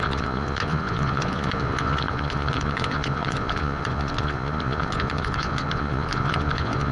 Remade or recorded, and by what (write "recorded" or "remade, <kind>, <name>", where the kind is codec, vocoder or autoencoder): remade, vocoder, Vocos